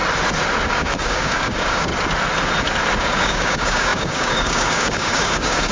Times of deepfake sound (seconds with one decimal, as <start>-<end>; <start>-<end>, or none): 0.7-1.9; 3.0-5.7